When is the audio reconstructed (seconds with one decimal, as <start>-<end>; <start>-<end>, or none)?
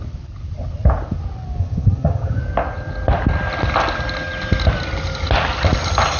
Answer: 1.6-2.4